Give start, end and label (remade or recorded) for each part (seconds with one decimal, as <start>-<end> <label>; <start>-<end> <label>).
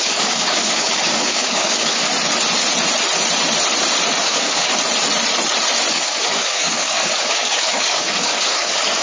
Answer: 0.0-2.1 remade; 2.1-4.2 recorded; 4.2-4.7 remade; 4.7-5.9 recorded; 5.9-9.0 remade